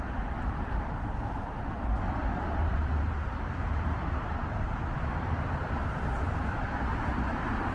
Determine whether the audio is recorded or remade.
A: remade